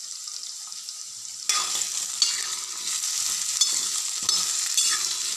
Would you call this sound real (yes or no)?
yes